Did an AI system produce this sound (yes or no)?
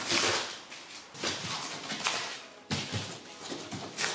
no